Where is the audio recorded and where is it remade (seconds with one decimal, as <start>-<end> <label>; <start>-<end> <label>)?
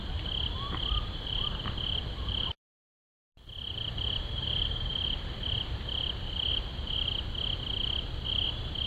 0.0-1.1 recorded; 1.1-6.3 remade; 6.3-8.9 recorded